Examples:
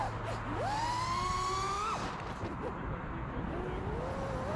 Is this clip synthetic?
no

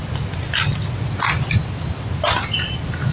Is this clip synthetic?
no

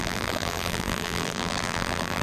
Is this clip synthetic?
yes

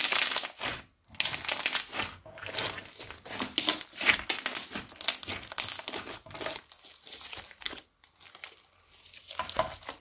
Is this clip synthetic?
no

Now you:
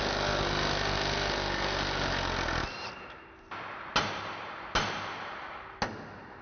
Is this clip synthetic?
no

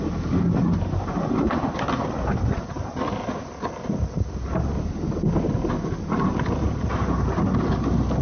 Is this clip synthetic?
no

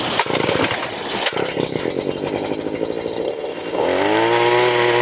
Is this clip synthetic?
no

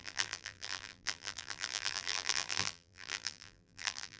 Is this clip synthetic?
yes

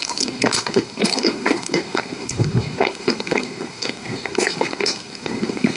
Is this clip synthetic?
yes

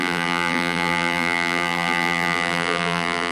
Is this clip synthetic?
yes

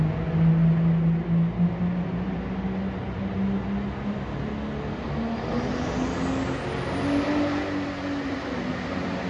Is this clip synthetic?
no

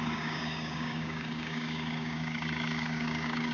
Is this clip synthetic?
yes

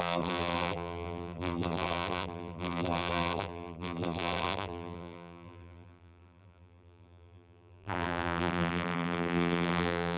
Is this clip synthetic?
yes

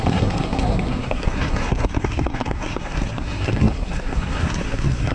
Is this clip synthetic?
yes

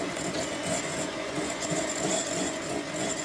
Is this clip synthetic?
yes